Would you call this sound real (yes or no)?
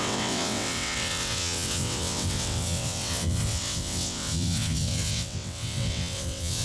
no